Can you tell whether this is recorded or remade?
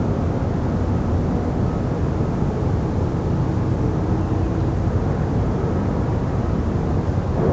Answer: recorded